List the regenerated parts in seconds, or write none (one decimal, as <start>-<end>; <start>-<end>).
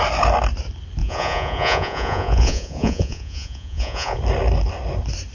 1.0-4.2